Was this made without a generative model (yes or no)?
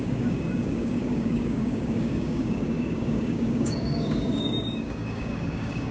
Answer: no